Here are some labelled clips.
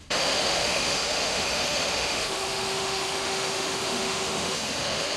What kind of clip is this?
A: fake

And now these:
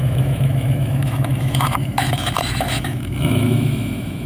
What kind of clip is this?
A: fake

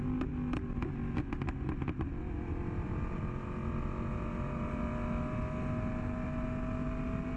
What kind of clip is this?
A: real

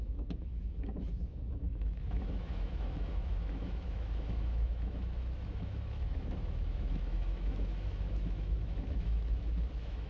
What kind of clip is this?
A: fake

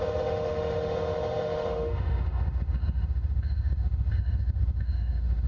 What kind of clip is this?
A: fake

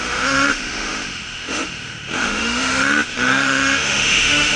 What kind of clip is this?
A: fake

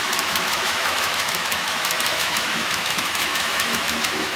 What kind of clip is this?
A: fake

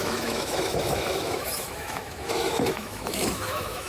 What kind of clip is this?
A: fake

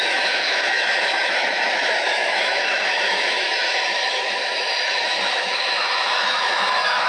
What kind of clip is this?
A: fake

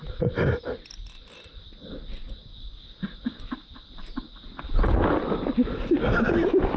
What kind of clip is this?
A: real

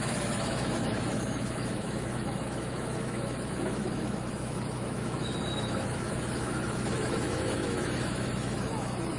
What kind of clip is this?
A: fake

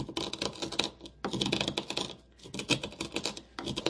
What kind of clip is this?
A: real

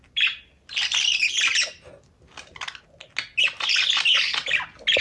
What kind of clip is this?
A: real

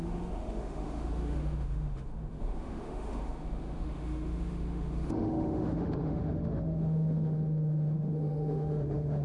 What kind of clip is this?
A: fake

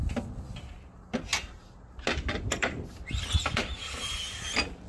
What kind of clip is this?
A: real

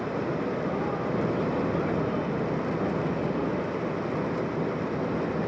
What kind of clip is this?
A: real